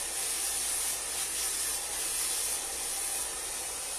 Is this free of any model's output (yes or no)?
yes